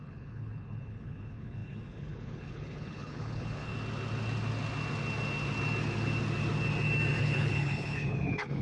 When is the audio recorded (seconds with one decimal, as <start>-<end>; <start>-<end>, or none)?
3.7-7.2